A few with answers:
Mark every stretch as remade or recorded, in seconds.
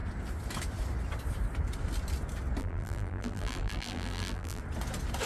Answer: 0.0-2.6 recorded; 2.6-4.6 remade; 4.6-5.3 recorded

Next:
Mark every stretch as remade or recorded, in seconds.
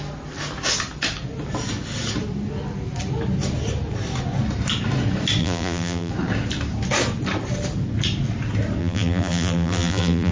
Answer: 0.0-5.4 recorded; 5.4-6.1 remade; 6.1-8.8 recorded; 8.8-10.3 remade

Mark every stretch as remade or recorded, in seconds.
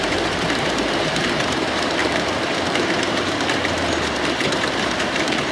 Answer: 0.0-5.5 remade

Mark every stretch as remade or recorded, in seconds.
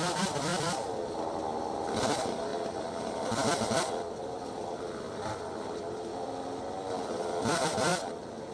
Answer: 0.0-0.5 remade; 0.5-1.2 recorded; 1.2-8.5 remade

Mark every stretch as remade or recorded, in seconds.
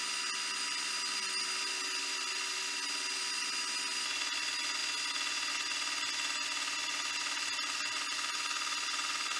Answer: 0.0-4.8 remade; 4.8-5.5 recorded; 5.5-9.4 remade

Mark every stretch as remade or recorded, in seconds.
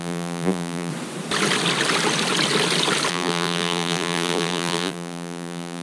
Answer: 0.0-0.9 remade; 0.9-3.1 recorded; 3.1-5.8 remade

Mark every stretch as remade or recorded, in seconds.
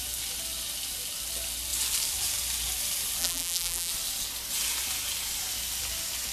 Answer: 0.0-3.2 recorded; 3.2-3.9 remade; 3.9-6.3 recorded